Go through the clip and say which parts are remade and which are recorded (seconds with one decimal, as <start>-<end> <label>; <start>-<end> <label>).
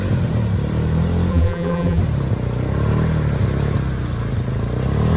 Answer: 0.0-1.3 recorded; 1.3-2.0 remade; 2.0-5.2 recorded